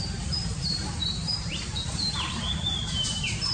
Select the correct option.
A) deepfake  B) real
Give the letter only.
A